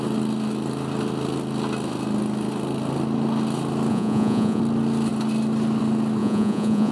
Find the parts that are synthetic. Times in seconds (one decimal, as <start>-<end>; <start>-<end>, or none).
3.9-4.6; 6.2-6.9